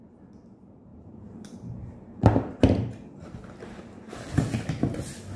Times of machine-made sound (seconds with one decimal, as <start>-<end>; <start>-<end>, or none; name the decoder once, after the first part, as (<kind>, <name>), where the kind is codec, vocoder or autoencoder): 0.9-4.1 (vocoder, BigVGAN v2)